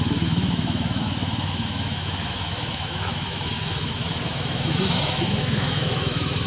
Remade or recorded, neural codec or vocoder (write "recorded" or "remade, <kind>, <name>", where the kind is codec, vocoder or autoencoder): remade, autoencoder, DAC-VAE